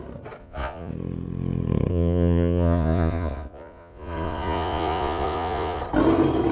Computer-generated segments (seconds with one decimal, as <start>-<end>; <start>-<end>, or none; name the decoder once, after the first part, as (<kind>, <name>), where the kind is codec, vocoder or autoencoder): 0.4-0.9 (vocoder, Vocos); 1.9-5.8